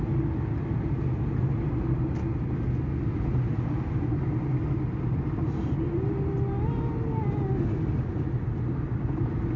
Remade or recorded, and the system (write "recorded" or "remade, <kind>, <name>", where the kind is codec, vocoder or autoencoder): recorded